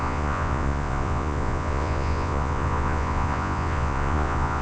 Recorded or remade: remade